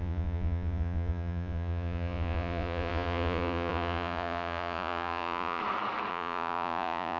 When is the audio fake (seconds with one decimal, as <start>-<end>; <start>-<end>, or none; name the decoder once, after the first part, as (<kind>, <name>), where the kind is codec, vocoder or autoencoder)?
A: 0.0-5.6 (vocoder, Vocos); 6.1-7.2